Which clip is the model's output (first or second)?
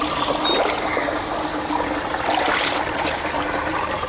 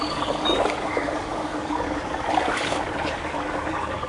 second